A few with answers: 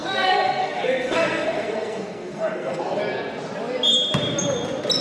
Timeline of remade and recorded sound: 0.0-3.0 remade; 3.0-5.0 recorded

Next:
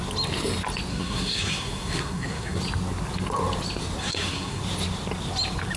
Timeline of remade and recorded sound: 0.0-0.9 recorded; 0.9-2.6 remade; 2.6-4.0 recorded; 4.0-4.6 remade; 4.6-5.8 recorded